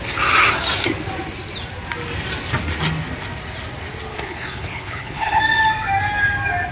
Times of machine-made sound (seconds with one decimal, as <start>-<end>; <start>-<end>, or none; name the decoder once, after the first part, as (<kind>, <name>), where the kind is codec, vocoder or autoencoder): 4.1-5.4 (codec, HILCodec)